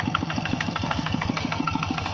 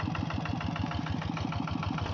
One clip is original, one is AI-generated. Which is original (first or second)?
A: second